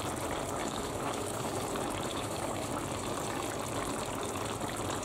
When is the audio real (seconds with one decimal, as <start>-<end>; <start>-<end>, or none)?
0.0-0.6; 1.5-2.1; 2.7-5.0